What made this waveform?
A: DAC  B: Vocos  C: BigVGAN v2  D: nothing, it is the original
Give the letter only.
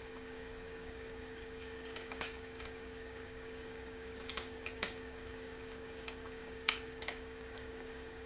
A